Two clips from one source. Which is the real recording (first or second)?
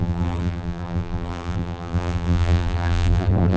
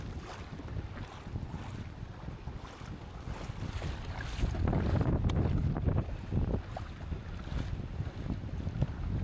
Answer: second